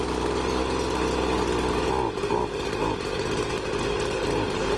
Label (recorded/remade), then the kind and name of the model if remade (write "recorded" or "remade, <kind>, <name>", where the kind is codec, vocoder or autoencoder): recorded